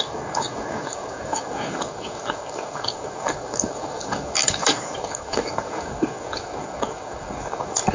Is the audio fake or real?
fake